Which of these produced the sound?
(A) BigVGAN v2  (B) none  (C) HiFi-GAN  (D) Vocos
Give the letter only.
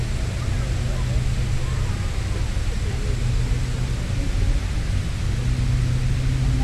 B